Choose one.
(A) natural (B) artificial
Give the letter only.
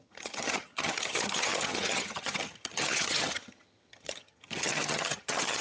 B